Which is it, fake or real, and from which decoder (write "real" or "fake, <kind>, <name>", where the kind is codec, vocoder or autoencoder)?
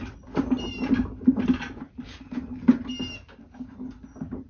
real